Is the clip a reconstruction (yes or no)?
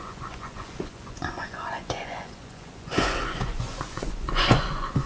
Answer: yes